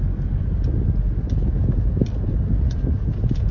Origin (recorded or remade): recorded